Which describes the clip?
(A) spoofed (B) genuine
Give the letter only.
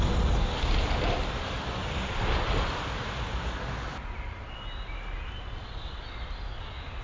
B